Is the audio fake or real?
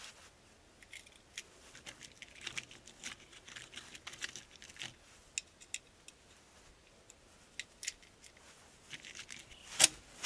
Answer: real